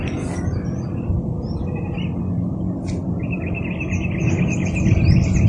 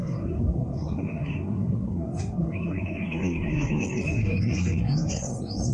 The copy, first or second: second